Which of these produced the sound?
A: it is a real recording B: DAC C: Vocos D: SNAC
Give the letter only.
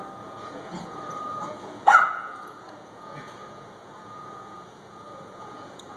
C